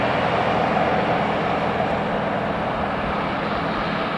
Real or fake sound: real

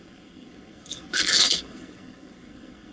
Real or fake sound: fake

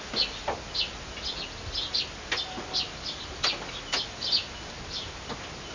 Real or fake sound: real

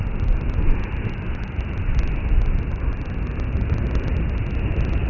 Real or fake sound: real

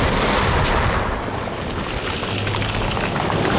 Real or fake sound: real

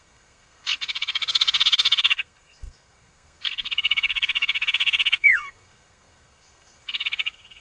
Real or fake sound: fake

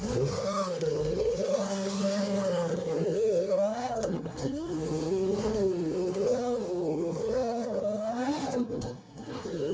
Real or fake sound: fake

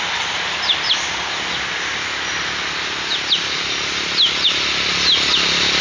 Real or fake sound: real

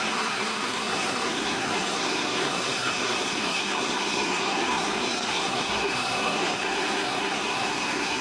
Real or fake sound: fake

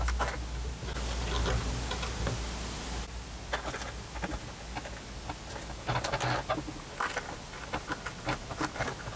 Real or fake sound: real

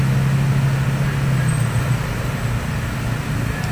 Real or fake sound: real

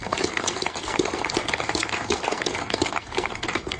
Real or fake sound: fake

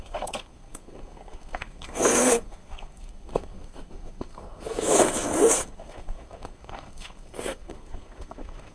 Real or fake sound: fake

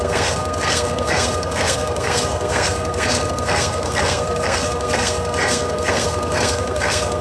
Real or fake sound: fake